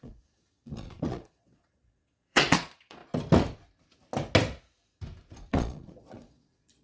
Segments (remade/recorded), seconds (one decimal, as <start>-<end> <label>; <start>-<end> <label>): 0.0-3.0 remade; 3.0-5.5 recorded; 5.5-6.8 remade